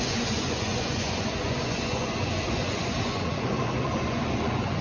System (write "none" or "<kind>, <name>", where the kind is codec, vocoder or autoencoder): vocoder, Vocos